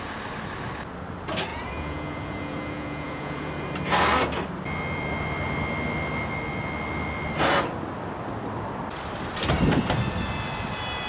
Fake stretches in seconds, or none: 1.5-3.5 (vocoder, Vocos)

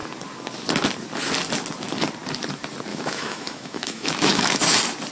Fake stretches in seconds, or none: 2.9-4.6 (autoencoder, DAC-VAE)

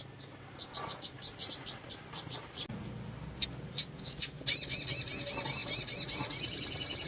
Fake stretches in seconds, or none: none

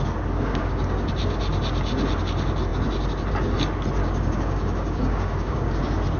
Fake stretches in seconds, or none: 0.6-1.1 (codec, DAC); 4.0-5.8

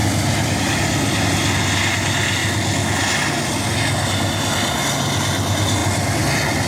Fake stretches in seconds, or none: none

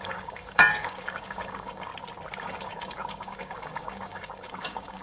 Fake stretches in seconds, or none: 0.0-1.9 (codec, DAC); 2.4-5.0